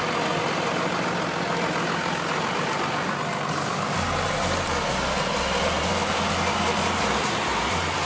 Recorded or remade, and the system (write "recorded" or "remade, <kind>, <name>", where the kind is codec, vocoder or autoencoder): recorded